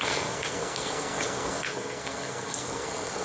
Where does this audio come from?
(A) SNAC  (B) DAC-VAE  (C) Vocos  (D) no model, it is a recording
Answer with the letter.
A